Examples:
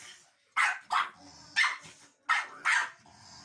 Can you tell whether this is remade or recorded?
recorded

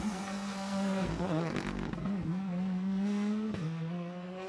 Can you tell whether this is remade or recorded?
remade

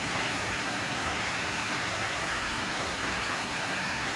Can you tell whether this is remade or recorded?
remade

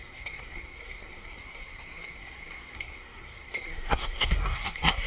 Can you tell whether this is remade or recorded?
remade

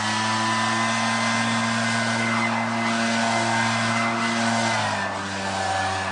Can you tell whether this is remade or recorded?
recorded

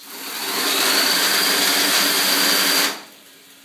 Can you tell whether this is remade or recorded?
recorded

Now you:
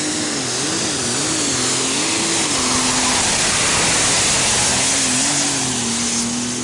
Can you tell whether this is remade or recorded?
recorded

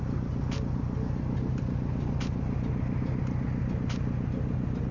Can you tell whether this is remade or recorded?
recorded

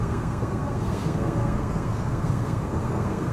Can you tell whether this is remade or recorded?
remade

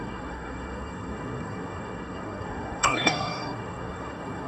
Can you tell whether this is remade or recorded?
remade